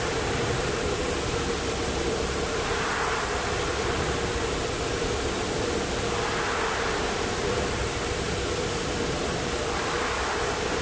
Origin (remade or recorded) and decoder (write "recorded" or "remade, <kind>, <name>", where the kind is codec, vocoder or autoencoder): recorded